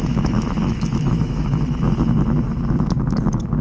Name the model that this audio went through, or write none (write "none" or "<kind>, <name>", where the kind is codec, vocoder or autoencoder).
autoencoder, DAC-VAE